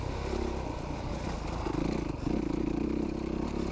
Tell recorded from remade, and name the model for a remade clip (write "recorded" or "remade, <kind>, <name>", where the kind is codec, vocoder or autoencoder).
recorded